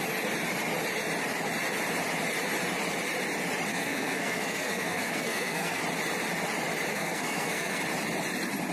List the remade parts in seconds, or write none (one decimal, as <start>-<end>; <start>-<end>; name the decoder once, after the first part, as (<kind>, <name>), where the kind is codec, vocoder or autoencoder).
3.7-5.8 (codec, SNAC); 6.9-7.8